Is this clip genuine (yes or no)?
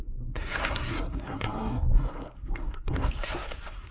no